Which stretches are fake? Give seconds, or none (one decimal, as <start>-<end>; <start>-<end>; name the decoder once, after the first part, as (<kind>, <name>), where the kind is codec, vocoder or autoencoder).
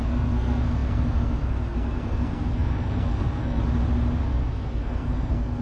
0.0-3.6 (codec, SNAC); 4.2-5.6